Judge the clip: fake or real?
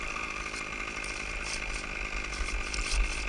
real